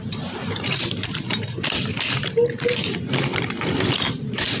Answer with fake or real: fake